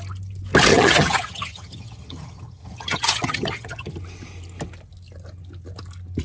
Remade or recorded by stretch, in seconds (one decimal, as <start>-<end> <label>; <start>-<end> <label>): 0.0-0.7 recorded; 0.7-3.9 remade; 3.9-6.2 recorded